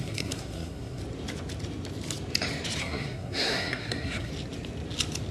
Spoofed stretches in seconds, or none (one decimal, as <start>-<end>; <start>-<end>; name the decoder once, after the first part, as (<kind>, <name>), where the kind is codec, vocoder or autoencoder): 0.0-1.0 (codec, SNAC); 2.8-4.3